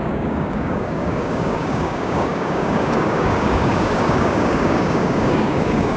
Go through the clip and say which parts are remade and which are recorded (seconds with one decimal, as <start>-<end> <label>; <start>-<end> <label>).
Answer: 0.0-6.0 remade

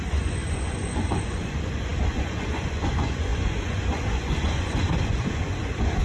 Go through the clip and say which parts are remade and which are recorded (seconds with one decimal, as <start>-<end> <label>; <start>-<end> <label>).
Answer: 0.0-6.0 remade

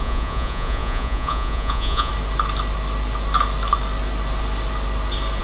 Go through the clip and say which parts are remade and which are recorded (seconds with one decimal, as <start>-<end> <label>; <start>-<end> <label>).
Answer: 0.0-2.1 remade; 2.1-5.4 recorded